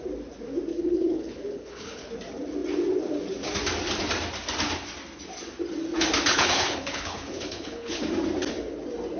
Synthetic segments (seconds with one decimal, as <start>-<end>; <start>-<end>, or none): 0.7-2.1; 6.3-8.1